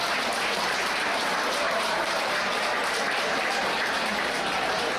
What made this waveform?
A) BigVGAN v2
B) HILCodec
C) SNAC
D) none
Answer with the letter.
A